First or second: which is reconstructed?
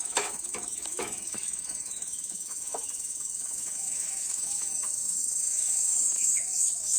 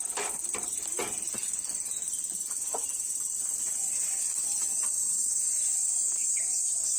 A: first